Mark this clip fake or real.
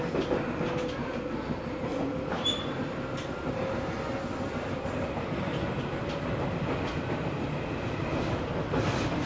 real